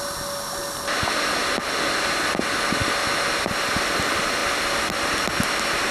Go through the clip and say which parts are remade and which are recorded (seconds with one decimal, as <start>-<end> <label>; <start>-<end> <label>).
0.0-5.9 recorded